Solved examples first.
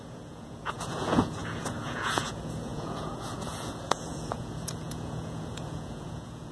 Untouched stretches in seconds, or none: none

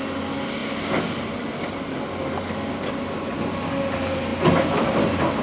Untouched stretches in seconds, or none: 0.0-5.4

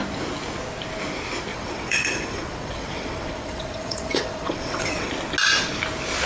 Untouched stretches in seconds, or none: 0.0-1.5; 5.1-6.3